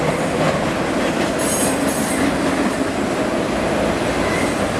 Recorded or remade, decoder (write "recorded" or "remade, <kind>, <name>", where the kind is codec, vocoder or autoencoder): recorded